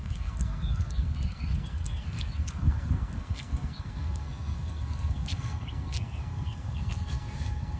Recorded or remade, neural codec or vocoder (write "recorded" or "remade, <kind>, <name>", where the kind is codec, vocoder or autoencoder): remade, codec, SNAC